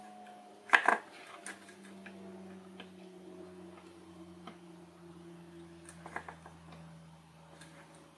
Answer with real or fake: real